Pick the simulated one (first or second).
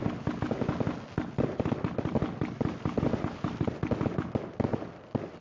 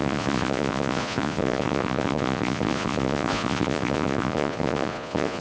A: second